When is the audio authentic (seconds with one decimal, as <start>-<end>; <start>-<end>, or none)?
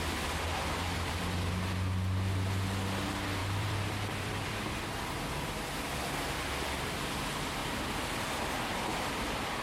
0.0-3.4; 4.6-8.7